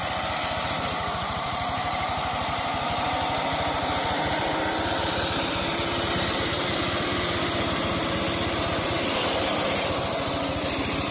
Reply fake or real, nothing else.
real